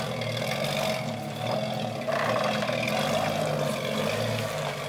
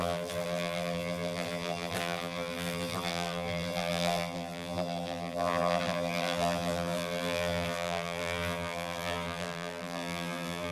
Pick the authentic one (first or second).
first